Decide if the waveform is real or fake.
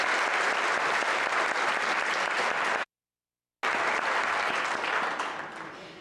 real